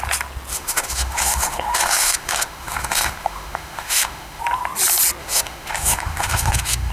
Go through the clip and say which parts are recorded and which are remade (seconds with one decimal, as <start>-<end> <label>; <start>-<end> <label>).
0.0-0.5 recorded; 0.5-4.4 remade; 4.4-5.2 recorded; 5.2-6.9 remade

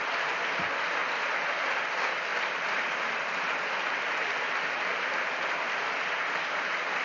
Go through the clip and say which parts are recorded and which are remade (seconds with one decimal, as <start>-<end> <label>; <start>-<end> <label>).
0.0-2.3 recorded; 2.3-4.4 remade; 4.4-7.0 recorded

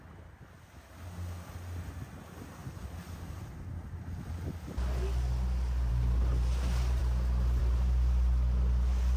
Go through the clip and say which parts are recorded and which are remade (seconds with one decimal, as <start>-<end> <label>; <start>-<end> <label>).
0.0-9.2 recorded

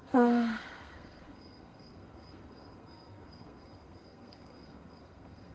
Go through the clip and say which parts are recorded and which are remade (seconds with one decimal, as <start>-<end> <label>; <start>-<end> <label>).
0.0-5.5 remade